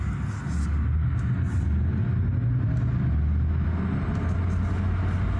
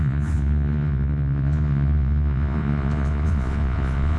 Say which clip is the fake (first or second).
second